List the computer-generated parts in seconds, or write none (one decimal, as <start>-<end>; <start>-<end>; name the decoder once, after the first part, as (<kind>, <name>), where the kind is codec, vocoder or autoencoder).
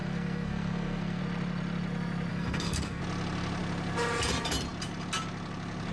0.0-1.2 (codec, SNAC); 2.3-3.0